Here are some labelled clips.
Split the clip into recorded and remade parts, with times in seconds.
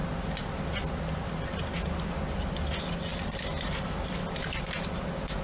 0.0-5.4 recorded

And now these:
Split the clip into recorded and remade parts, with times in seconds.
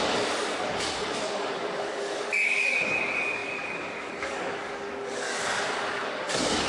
0.0-6.7 remade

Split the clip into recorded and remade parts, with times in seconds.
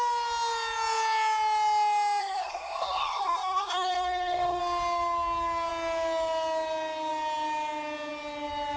0.0-2.2 recorded; 2.2-4.6 remade; 4.6-8.8 recorded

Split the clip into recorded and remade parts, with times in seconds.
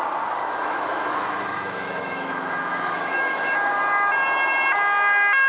0.0-0.4 recorded; 0.4-3.7 remade; 3.7-5.5 recorded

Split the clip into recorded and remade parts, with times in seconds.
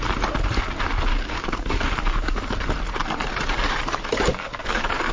0.0-1.1 recorded; 1.1-2.5 remade; 2.5-4.3 recorded; 4.3-5.1 remade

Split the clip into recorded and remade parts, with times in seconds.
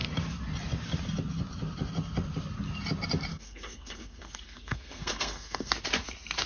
0.0-3.3 recorded; 3.3-5.7 remade; 5.7-6.5 recorded